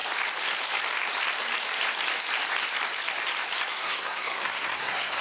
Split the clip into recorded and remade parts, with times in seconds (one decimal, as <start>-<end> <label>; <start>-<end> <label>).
0.0-3.7 recorded; 3.7-5.2 remade